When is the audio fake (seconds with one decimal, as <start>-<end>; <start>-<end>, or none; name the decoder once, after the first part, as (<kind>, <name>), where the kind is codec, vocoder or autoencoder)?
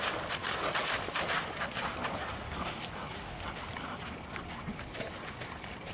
none